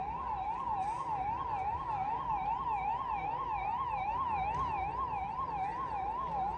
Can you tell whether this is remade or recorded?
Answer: recorded